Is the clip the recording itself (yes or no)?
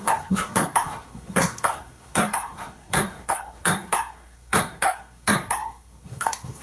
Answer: no